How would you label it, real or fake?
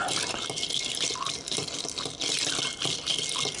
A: real